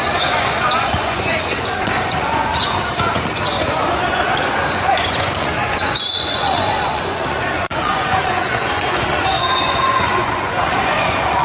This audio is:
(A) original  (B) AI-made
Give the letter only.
B